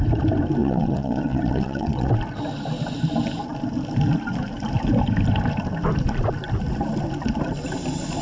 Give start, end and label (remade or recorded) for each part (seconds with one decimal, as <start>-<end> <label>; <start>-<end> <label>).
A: 0.0-0.6 recorded; 0.6-2.1 remade; 2.1-8.2 recorded